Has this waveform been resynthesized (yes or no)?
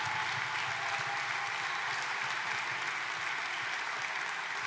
no